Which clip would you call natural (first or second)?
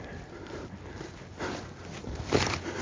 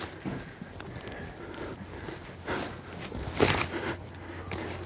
second